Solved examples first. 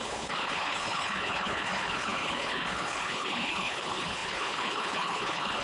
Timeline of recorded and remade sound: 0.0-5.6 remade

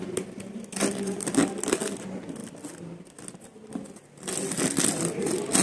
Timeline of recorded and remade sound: 0.0-5.6 recorded

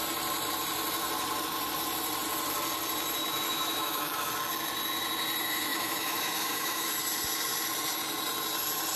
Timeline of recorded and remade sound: 0.0-3.2 recorded; 3.2-4.3 remade; 4.3-5.7 recorded; 5.7-6.9 remade; 6.9-9.0 recorded

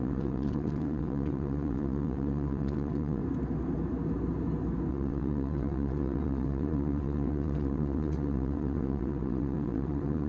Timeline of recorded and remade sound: 0.0-3.2 remade; 3.2-4.9 recorded; 4.9-10.3 remade

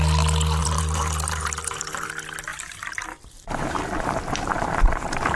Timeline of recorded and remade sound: 0.0-0.6 recorded; 0.6-1.8 remade; 1.8-2.5 recorded; 2.5-5.4 remade

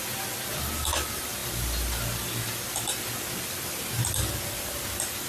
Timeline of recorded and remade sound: 0.0-5.3 recorded

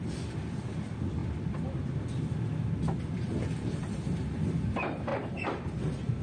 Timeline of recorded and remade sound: 0.0-6.2 recorded

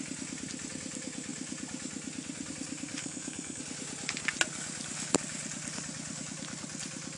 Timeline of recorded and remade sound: 0.0-3.0 recorded; 3.0-3.6 remade; 3.6-7.2 recorded